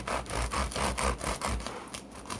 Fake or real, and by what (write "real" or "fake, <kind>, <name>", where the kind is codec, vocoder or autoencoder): real